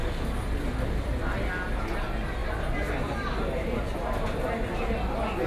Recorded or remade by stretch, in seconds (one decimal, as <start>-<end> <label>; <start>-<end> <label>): 0.0-5.5 recorded